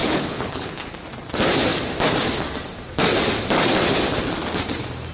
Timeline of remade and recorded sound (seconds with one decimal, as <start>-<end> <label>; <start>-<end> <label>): 0.0-1.0 remade; 1.0-5.1 recorded